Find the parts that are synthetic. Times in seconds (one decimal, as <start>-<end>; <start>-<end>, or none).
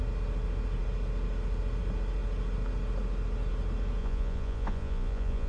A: 4.0-5.5